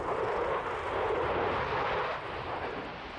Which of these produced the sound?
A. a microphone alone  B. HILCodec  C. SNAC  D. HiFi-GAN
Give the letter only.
A